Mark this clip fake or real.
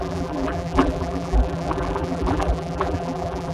fake